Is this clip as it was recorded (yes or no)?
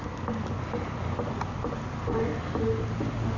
yes